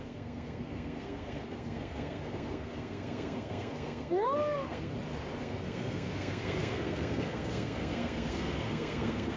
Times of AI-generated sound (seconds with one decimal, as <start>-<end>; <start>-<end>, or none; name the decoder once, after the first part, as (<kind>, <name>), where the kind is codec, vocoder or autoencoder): 0.0-4.9 (codec, SNAC); 5.4-9.4